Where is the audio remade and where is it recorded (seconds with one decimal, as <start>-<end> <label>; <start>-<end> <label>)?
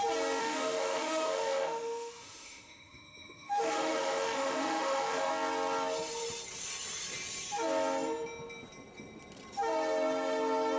0.0-0.4 recorded; 0.4-5.3 remade; 5.3-10.8 recorded